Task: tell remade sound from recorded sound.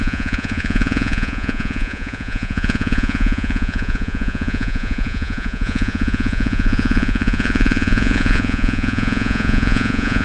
remade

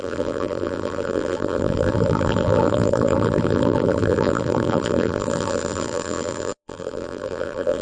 remade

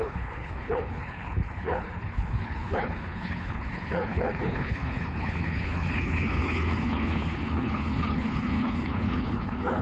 remade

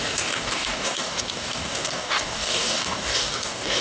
remade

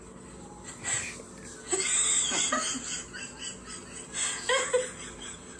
recorded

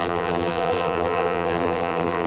remade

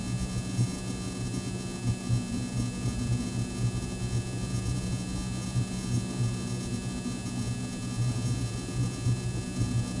remade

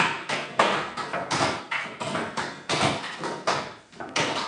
remade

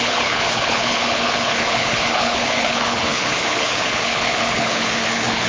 remade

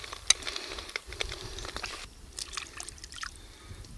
recorded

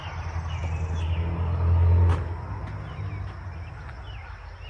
recorded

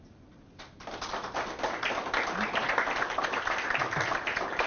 recorded